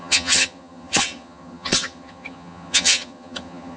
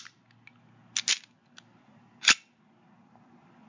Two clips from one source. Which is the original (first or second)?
second